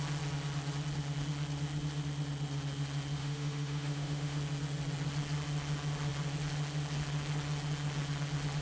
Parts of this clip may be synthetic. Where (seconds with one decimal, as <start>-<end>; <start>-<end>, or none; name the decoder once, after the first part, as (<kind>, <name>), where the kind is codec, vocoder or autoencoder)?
3.2-4.4 (autoencoder, DAC-VAE)